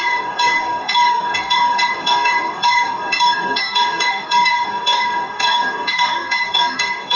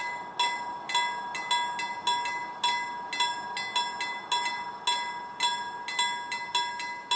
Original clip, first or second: second